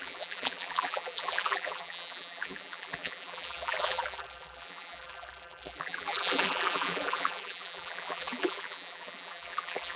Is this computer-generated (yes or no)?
yes